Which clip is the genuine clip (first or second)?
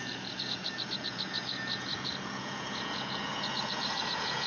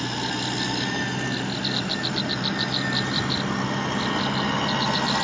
second